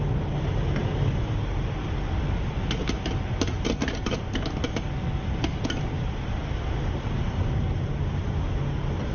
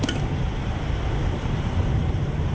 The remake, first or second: second